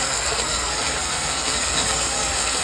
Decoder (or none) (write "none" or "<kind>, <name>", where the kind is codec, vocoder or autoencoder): codec, SNAC